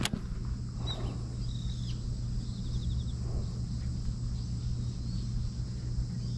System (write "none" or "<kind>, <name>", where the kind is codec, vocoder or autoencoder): none